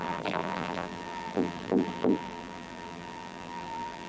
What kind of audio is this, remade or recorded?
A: remade